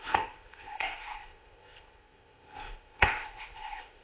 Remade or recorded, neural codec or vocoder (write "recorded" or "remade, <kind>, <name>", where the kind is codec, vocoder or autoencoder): remade, codec, ZipCodec